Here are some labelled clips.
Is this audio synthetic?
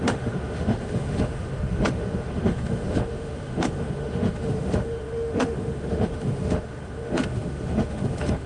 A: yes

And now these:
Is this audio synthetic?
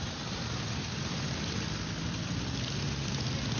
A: no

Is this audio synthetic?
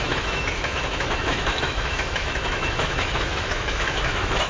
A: yes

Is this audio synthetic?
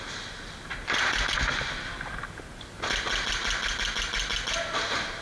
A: no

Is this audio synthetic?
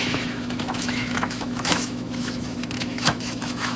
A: yes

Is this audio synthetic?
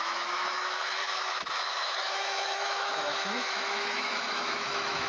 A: yes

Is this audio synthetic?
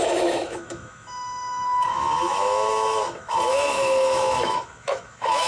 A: yes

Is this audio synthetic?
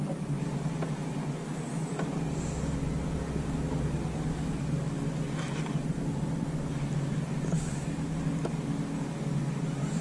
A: no